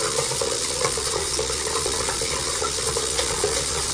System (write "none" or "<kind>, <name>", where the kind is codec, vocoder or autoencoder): vocoder, Vocos